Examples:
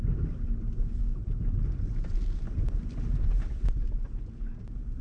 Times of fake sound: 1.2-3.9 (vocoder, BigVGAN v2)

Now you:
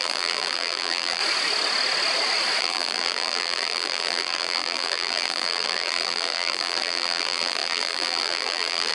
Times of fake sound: 0.0-1.2 (vocoder, BigVGAN v2); 2.6-8.9

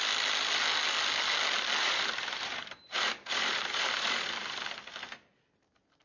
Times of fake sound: 1.8-5.4 (vocoder, BigVGAN v2)

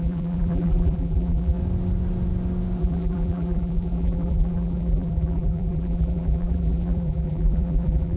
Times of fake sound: 0.0-1.6 (vocoder, BigVGAN v2); 2.8-8.2